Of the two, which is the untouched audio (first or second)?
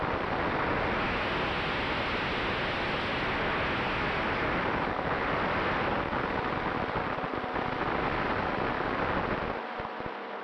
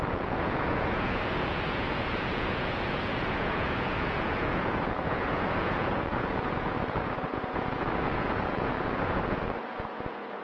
first